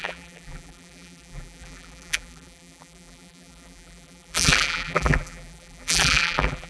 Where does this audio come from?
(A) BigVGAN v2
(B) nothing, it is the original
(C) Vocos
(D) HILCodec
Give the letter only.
A